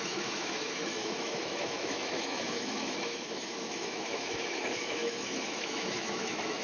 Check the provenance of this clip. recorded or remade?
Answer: remade